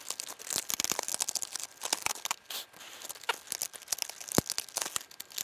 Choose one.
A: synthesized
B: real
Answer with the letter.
B